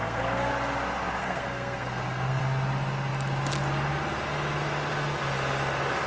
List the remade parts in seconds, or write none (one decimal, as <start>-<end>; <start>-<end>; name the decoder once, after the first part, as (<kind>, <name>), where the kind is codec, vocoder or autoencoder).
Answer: 0.0-0.5 (codec, SNAC); 1.2-2.4

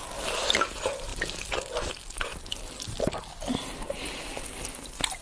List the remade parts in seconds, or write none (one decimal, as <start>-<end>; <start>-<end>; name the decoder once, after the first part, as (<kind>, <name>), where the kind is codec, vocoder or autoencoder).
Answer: none